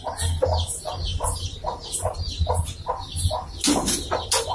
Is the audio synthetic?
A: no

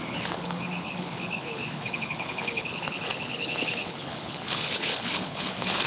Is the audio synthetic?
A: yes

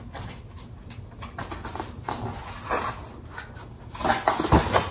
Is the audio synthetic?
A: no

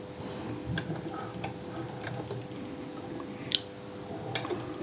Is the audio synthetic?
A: no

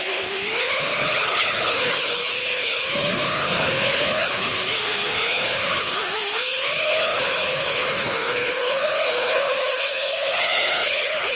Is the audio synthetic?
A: yes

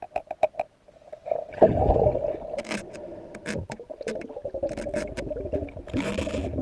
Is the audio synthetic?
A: no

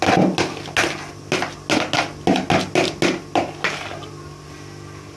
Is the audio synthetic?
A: no